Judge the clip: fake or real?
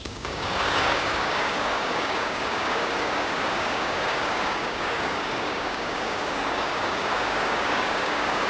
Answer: fake